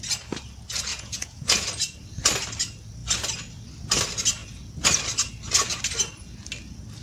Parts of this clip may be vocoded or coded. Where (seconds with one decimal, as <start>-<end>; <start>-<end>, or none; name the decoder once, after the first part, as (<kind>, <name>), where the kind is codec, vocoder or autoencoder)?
0.9-1.7 (vocoder, Vocos)